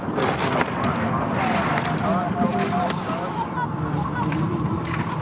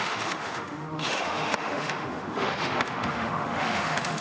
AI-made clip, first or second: second